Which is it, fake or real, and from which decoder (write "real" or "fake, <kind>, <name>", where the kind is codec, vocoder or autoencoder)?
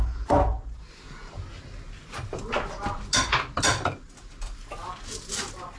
real